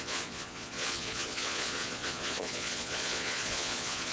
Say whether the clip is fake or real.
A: fake